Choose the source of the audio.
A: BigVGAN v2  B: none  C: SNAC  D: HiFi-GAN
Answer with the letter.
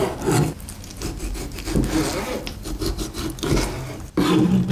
B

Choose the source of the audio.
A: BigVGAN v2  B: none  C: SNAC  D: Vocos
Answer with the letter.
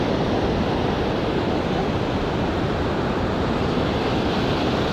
A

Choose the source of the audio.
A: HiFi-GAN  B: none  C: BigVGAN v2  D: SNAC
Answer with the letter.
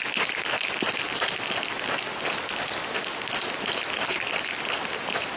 B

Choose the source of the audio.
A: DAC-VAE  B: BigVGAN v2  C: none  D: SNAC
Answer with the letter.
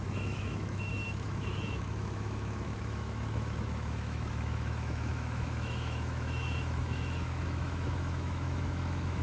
A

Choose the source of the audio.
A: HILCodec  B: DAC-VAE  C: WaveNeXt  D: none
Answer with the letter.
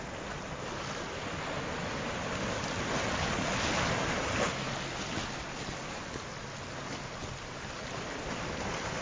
D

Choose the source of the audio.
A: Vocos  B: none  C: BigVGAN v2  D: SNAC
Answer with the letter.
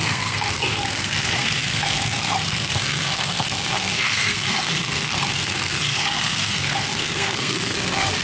D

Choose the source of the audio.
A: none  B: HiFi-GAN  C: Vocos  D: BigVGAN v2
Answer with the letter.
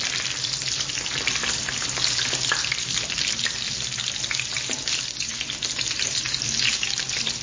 A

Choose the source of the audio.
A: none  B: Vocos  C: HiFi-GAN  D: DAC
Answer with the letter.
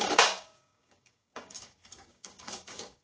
D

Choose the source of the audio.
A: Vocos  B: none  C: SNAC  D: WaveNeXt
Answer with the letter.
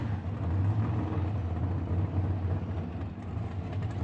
B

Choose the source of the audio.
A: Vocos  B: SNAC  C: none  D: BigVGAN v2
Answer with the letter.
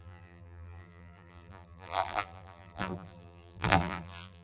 D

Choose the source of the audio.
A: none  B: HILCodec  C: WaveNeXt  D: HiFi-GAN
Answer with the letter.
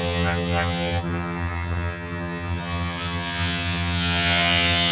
D